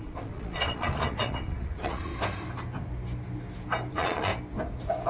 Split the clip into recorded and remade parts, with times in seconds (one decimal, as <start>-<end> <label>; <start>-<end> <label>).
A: 0.0-2.1 remade; 2.1-3.9 recorded; 3.9-4.3 remade; 4.3-5.1 recorded